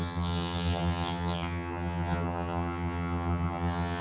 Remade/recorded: remade